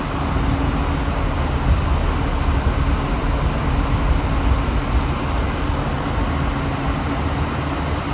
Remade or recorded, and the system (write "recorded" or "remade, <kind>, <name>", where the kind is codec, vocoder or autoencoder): recorded